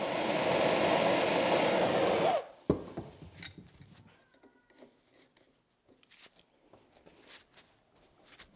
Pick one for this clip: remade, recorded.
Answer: recorded